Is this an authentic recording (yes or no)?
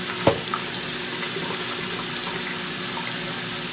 yes